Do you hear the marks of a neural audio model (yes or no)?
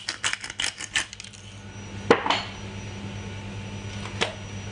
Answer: no